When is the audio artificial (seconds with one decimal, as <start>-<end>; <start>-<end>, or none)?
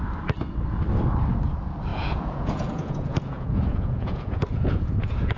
1.9-5.4